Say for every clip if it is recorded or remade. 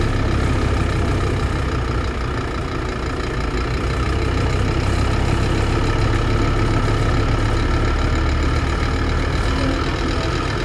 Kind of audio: recorded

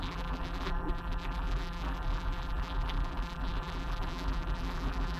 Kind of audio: remade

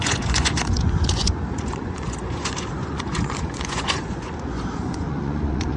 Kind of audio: remade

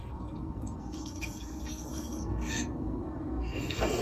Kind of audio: remade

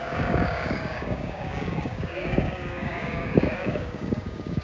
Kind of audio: remade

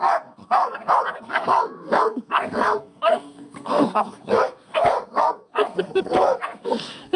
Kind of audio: remade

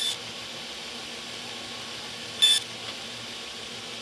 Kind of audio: recorded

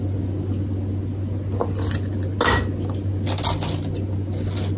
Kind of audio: recorded